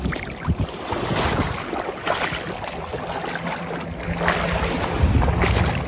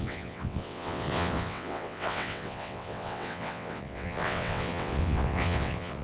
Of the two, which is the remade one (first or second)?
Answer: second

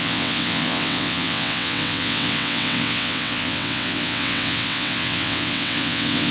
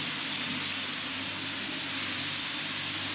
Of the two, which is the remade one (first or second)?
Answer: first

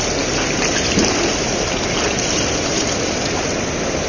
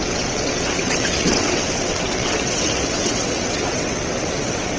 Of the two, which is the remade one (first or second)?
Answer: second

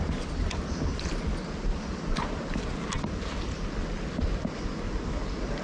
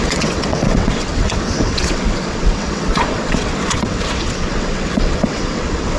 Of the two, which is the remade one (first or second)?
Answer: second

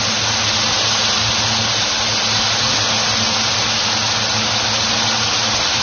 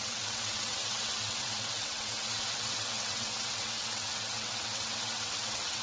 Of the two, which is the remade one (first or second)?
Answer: second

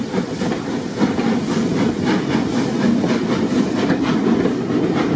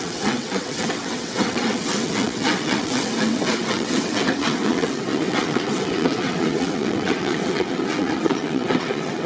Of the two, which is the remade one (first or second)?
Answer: second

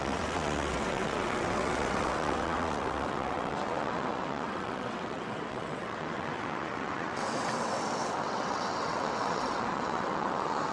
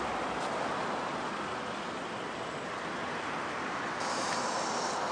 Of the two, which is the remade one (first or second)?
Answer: first